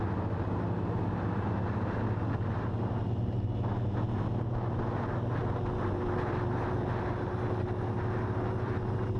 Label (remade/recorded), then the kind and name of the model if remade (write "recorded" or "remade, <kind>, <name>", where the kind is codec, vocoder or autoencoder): recorded